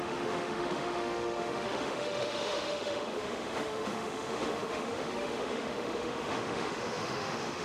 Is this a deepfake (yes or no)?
yes